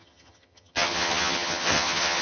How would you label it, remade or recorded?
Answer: remade